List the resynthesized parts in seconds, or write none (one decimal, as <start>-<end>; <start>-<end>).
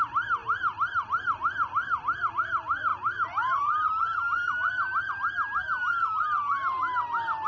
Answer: 2.9-5.1